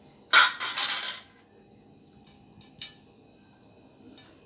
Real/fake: real